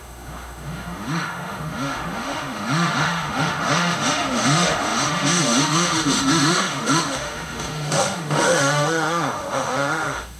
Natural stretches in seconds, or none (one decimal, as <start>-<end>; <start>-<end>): none